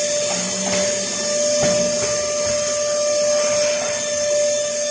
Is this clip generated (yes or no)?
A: no